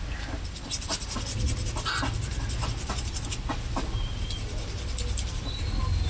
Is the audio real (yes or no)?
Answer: yes